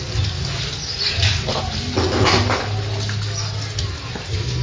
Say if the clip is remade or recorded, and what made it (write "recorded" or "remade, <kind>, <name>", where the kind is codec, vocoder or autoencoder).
recorded